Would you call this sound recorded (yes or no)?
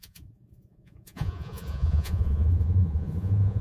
no